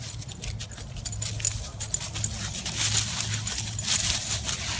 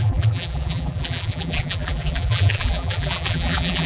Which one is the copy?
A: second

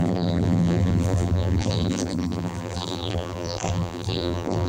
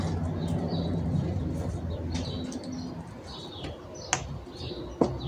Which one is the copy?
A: first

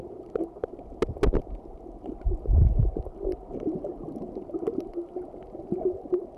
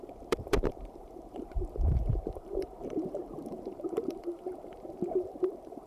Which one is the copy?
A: second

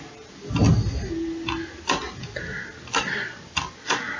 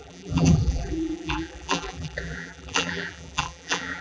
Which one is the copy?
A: second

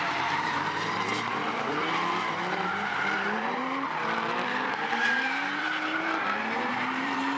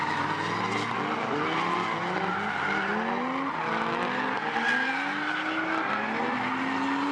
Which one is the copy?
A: first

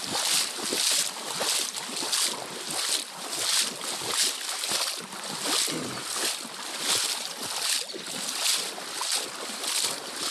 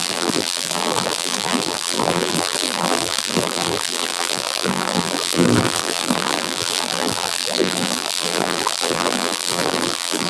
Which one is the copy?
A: second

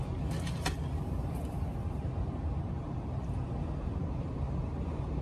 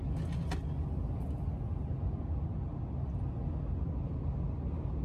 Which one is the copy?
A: first